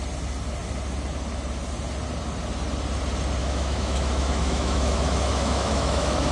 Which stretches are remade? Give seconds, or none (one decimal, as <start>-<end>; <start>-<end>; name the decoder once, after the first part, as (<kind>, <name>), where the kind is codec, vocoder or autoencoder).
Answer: 3.4-6.3 (autoencoder, DAC-VAE)